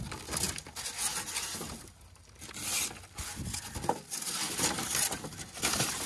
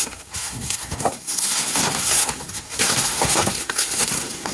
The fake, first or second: second